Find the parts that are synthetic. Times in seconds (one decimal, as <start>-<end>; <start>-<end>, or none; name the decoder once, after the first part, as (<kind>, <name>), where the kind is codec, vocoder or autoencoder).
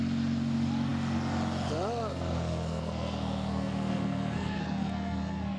2.1-5.6 (codec, SNAC)